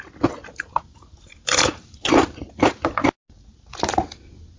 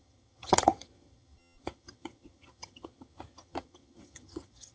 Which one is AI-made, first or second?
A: second